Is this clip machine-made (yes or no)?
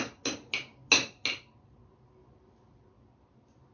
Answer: no